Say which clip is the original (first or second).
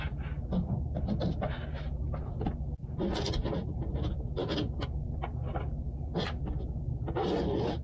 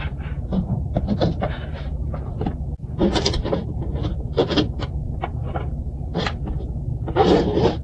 first